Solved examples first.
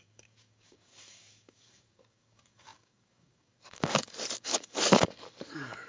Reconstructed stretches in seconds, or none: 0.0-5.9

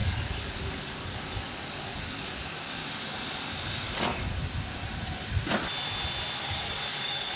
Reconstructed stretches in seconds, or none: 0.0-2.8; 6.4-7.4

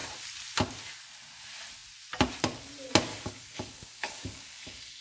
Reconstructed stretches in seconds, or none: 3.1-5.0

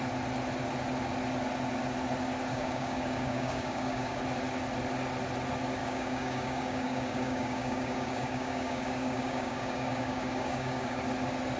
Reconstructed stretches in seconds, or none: 2.5-4.2; 5.8-11.0

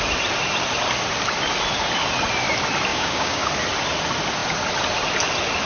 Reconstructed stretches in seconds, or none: 2.9-3.5

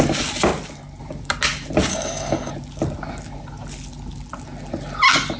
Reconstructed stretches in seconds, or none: 1.9-2.5